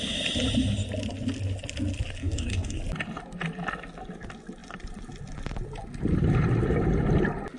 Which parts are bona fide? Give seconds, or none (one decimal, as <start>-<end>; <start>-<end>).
0.0-2.2; 2.8-7.6